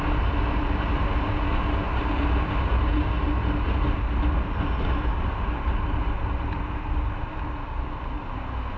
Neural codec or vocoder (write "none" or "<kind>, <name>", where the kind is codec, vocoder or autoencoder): none